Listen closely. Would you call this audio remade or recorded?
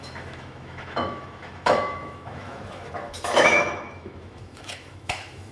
remade